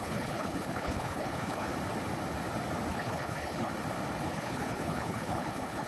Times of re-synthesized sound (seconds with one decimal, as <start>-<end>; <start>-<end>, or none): 0.0-1.7; 2.9-3.7; 4.2-5.9